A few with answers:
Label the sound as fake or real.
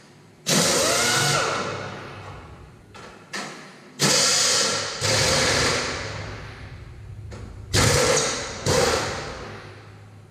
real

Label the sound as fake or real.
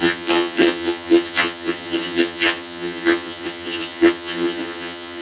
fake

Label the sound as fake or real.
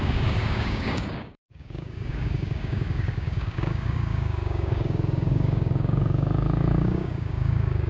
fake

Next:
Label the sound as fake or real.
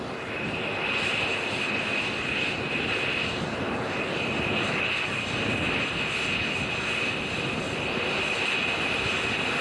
real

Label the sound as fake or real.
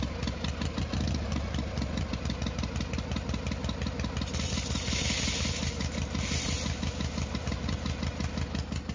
real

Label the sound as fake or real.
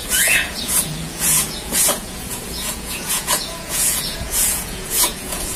fake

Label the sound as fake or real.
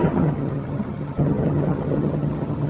fake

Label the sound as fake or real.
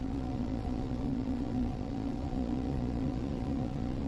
fake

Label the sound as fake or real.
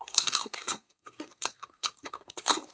fake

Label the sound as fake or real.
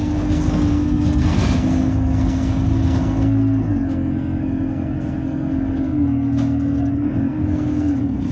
fake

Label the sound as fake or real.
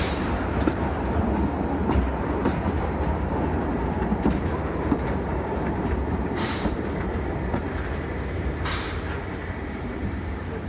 fake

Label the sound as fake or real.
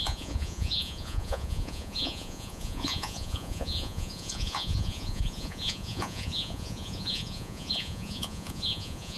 fake